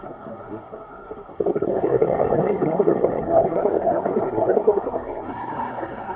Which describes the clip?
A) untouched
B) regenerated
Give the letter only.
B